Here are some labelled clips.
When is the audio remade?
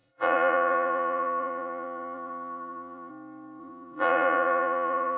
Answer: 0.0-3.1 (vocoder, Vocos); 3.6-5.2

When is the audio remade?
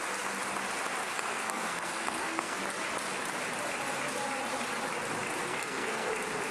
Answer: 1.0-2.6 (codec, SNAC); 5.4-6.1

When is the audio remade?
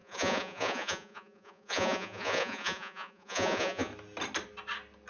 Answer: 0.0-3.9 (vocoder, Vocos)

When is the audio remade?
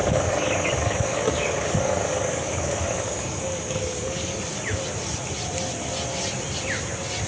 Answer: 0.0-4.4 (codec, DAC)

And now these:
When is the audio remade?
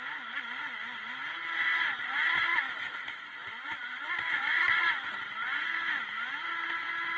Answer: none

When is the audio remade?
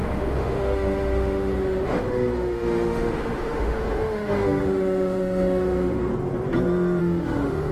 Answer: 0.0-6.1 (autoencoder, DAC-VAE); 7.0-7.7